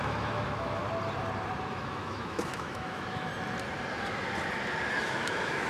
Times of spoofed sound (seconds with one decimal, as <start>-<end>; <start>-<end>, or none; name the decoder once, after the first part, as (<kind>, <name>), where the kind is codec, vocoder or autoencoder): 0.0-0.8 (autoencoder, DAC-VAE); 1.7-3.3; 4.9-5.7